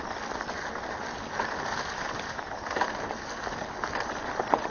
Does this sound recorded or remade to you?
recorded